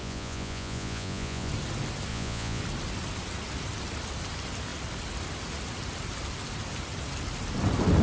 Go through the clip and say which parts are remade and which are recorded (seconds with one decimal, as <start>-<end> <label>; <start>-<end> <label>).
0.0-1.5 remade; 1.5-2.1 recorded; 2.1-2.6 remade; 2.6-8.0 recorded